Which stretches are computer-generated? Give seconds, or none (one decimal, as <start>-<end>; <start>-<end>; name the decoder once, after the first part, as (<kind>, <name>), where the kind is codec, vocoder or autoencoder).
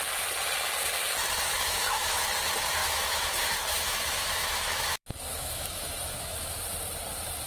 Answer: 1.5-2.2 (autoencoder, DAC-VAE); 2.8-6.5